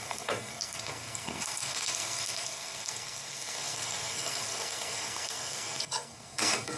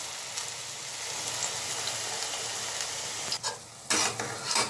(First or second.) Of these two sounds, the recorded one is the second